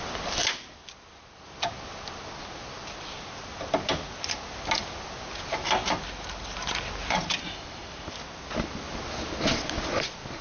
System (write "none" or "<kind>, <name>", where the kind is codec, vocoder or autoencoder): none